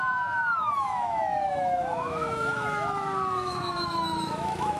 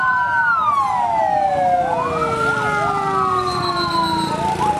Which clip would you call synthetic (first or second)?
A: first